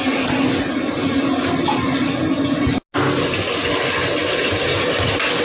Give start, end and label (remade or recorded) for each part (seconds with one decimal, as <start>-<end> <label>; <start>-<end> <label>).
0.0-5.4 recorded